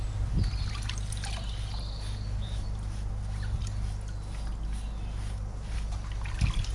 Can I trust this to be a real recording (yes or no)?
yes